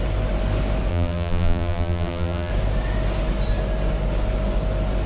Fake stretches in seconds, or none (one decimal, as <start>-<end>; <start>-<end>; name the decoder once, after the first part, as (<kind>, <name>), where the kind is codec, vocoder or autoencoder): 0.9-2.5 (vocoder, BigVGAN v2)